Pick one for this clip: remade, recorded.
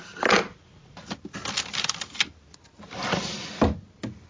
recorded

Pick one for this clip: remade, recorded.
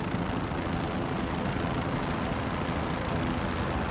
recorded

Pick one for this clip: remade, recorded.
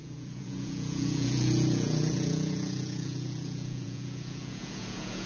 remade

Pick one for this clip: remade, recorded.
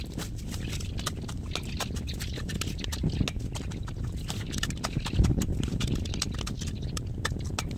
recorded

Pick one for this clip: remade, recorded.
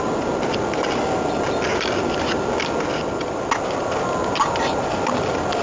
recorded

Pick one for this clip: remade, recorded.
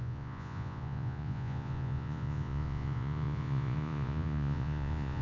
remade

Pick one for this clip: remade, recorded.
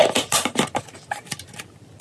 recorded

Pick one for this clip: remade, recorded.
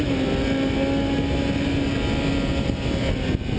recorded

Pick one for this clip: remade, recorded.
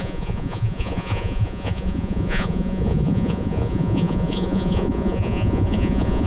remade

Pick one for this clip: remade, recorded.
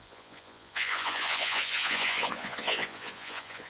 remade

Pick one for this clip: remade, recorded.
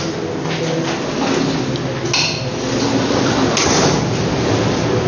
recorded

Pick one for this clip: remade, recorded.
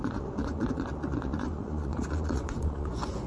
remade